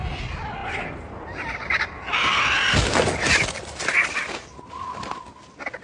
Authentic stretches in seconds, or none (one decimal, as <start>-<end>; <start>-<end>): 0.0-5.8